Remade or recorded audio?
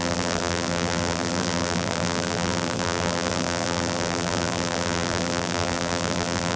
remade